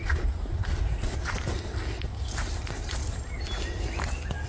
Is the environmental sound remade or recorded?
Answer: recorded